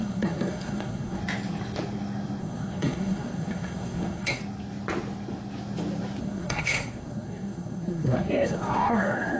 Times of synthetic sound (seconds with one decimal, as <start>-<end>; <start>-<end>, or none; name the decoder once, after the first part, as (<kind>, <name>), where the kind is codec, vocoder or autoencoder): 0.0-1.2 (codec, SNAC); 2.4-4.4; 6.2-9.4